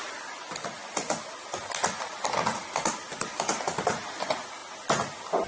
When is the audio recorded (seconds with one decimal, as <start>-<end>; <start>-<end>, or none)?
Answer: 0.0-5.5